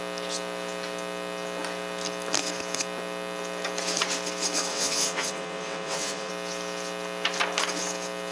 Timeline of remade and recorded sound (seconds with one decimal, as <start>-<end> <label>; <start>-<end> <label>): 0.0-4.7 recorded; 4.7-6.3 remade; 6.3-8.3 recorded